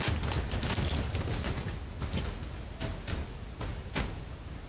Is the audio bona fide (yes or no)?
yes